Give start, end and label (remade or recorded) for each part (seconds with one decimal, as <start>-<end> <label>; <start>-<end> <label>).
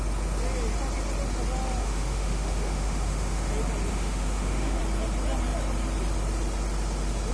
0.0-1.8 recorded; 1.8-3.5 remade; 3.5-3.9 recorded; 3.9-4.8 remade; 4.8-7.3 recorded